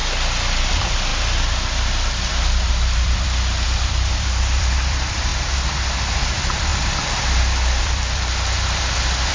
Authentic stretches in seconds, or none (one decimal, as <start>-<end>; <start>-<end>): 0.0-0.6; 1.1-2.2; 5.3-6.2; 6.7-7.8

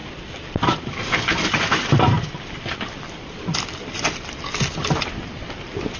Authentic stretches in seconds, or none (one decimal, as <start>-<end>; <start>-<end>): none

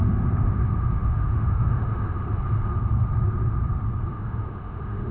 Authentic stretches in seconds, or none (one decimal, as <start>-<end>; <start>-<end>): 2.4-4.1

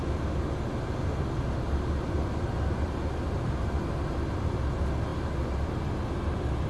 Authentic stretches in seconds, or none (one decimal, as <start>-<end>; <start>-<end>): 0.0-6.7

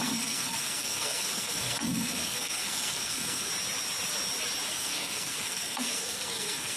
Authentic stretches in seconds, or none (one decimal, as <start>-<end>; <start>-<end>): 3.5-4.7